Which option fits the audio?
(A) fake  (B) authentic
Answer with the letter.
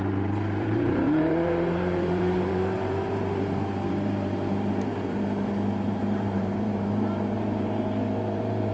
A